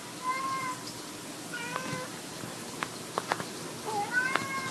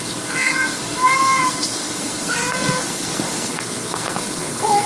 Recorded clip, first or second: first